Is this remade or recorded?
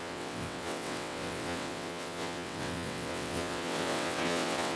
remade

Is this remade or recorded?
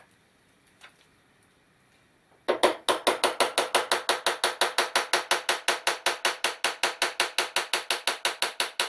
recorded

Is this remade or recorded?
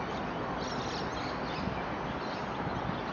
recorded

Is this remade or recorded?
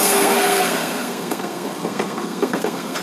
remade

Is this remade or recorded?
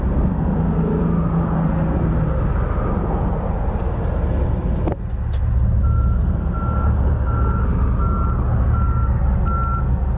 recorded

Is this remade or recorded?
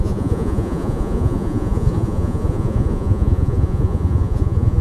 remade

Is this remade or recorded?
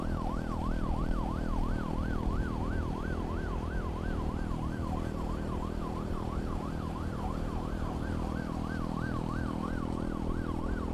recorded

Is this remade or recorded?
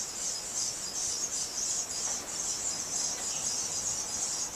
recorded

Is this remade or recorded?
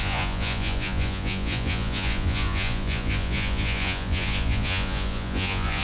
remade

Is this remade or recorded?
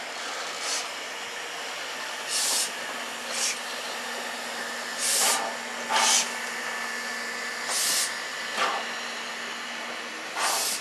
recorded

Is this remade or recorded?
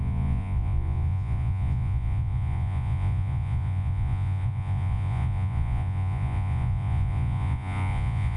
remade